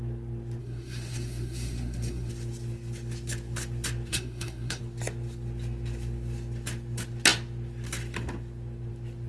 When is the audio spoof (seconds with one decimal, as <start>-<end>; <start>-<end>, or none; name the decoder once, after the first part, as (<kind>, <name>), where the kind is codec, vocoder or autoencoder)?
0.6-2.3 (codec, SNAC); 4.1-4.8